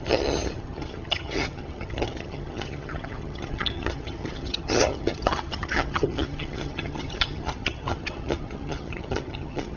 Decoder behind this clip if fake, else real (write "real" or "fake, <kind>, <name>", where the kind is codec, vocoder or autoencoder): fake, vocoder, HiFi-GAN